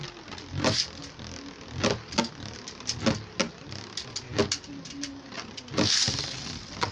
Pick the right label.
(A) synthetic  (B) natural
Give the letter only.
B